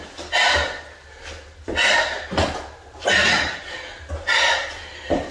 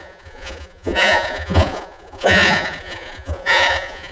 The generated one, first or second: second